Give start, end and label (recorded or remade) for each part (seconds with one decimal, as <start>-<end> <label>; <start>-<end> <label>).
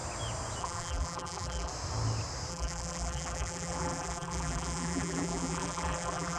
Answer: 0.0-0.6 recorded; 0.6-1.7 remade; 1.7-2.5 recorded; 2.5-6.4 remade